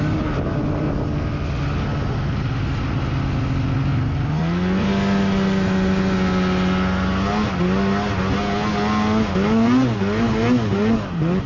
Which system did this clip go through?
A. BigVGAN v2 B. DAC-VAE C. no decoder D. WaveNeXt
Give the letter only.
C